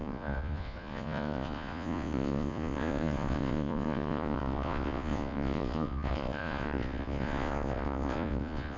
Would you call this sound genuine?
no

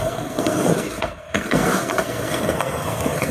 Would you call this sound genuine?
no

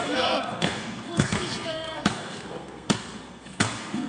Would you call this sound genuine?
no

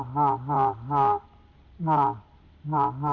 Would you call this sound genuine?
yes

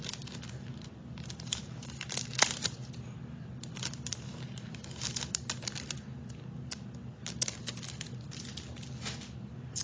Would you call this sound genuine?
yes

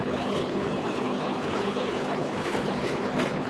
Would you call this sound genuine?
no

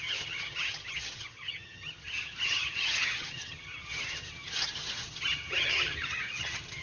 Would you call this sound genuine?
no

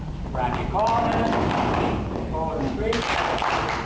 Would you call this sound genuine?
yes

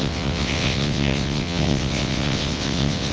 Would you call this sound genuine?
no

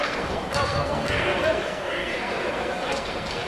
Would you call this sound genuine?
no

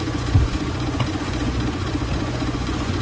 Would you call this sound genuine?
no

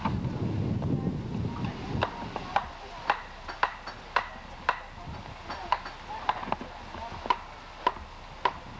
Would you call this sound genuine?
yes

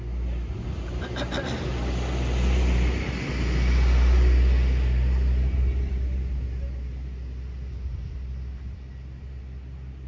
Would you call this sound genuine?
yes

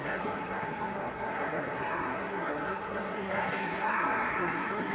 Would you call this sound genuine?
no